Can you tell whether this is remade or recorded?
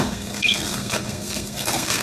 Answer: remade